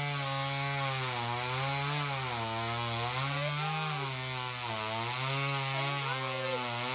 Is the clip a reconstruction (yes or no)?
no